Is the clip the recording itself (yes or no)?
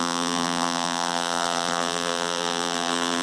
no